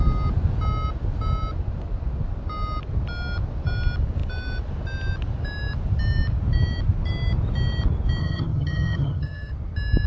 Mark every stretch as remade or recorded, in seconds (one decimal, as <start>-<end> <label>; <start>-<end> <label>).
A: 0.0-8.2 recorded; 8.2-9.5 remade; 9.5-10.1 recorded